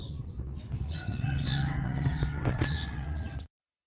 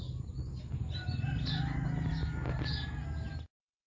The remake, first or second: first